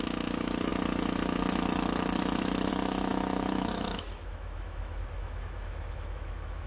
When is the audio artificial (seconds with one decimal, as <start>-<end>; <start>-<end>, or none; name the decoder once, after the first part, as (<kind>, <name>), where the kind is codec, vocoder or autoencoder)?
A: 0.0-6.7 (autoencoder, DAC-VAE)